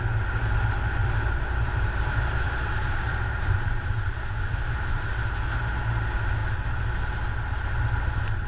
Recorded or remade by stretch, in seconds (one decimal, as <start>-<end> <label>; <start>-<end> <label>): 0.0-1.0 recorded; 1.0-2.1 remade; 2.1-2.8 recorded; 2.8-5.1 remade; 5.1-8.5 recorded